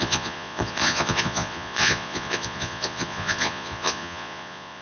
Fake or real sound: fake